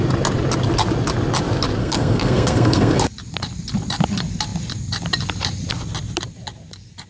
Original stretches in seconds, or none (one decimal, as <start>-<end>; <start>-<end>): 0.0-1.8; 3.0-7.1